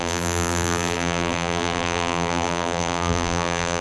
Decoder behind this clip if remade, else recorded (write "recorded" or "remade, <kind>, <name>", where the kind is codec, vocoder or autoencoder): remade, vocoder, BigVGAN v2